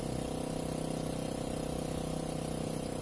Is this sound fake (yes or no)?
no